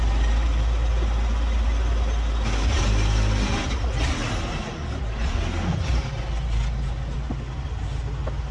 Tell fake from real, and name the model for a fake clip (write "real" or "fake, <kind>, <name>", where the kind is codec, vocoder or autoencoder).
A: real